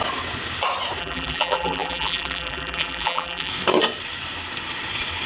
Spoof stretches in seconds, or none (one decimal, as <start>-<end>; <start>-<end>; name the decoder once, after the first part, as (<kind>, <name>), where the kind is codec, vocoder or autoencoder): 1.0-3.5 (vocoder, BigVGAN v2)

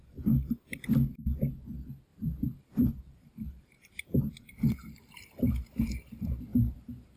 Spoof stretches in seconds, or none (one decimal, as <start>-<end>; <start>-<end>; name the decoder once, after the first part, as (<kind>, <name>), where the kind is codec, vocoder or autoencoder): 2.1-5.8 (vocoder, BigVGAN v2); 6.5-7.2

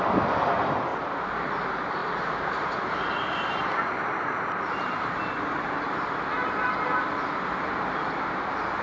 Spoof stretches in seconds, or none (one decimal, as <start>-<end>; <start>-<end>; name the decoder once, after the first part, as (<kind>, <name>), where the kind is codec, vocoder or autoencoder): 0.9-1.5 (vocoder, BigVGAN v2); 2.0-5.8

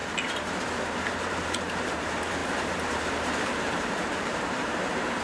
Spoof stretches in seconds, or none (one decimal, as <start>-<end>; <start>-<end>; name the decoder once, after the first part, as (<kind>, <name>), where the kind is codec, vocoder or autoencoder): 0.0-5.2 (vocoder, BigVGAN v2)

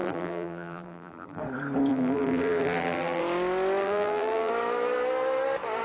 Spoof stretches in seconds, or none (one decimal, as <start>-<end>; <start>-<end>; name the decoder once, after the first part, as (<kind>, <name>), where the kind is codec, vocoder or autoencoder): 0.0-1.4 (vocoder, BigVGAN v2); 1.9-3.2; 3.8-4.5

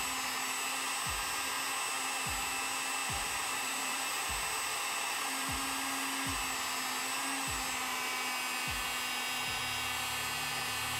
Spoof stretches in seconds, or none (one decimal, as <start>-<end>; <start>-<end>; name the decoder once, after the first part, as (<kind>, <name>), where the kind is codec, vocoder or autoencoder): 3.0-4.3 (vocoder, BigVGAN v2); 4.7-5.6

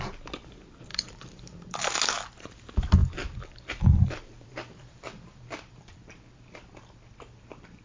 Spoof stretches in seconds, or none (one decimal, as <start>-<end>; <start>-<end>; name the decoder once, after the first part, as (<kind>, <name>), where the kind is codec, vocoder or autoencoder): 0.9-1.8 (vocoder, BigVGAN v2); 3.0-7.8